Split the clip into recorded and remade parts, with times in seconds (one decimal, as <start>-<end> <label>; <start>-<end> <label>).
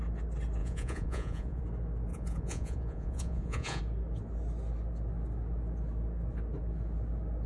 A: 0.0-0.6 recorded; 0.6-1.6 remade; 1.6-2.1 recorded; 2.1-3.8 remade; 3.8-7.5 recorded